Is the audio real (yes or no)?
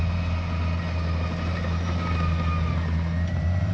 yes